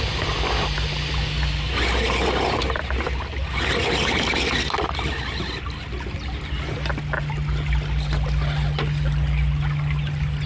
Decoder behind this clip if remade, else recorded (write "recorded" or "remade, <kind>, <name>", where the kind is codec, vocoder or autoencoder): recorded